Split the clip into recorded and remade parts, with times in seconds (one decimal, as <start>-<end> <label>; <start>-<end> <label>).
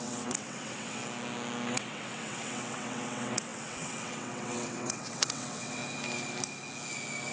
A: 0.0-1.0 remade; 1.0-1.7 recorded; 1.7-5.8 remade; 5.8-7.3 recorded